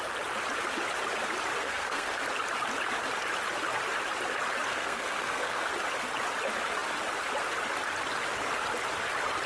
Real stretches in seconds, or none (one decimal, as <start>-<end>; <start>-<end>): 0.0-1.6; 2.2-4.7; 5.7-9.5